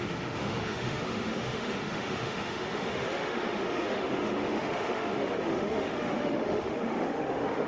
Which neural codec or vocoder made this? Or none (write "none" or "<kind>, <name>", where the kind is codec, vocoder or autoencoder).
autoencoder, DAC-VAE